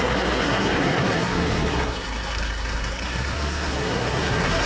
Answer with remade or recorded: remade